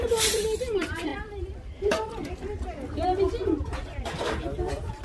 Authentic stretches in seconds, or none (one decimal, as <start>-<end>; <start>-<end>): 2.2-3.0